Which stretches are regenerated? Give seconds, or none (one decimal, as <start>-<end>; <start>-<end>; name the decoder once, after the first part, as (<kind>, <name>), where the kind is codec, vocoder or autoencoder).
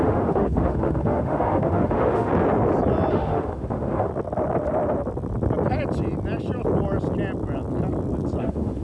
0.0-2.3 (autoencoder, DAC-VAE); 3.1-4.1; 8.4-8.8